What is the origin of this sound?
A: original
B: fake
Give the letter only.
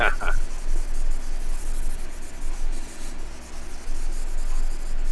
A